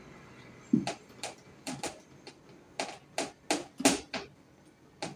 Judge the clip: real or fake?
real